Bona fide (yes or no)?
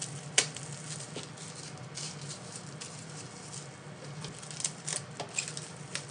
yes